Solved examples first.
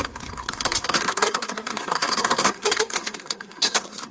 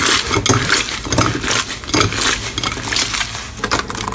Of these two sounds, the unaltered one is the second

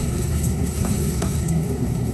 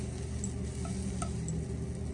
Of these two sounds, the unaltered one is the second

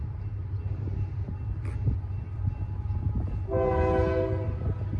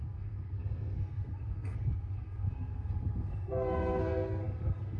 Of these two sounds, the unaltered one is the first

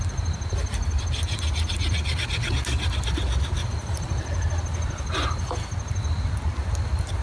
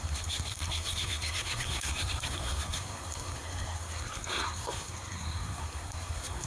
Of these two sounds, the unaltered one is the first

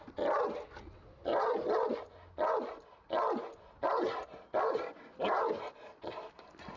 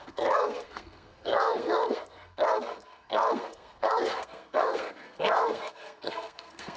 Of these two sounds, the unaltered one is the first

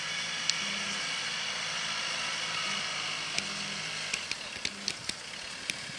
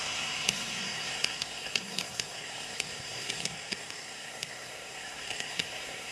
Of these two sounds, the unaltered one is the first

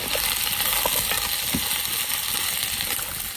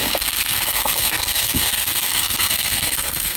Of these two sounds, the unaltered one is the first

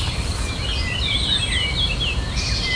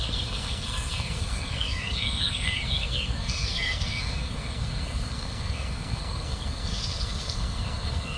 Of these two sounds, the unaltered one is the first